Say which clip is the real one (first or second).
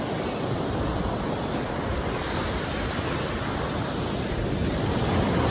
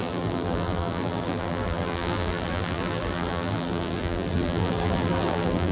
first